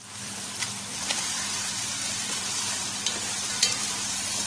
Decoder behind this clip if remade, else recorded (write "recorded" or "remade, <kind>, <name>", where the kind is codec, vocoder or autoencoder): remade, vocoder, BigVGAN v2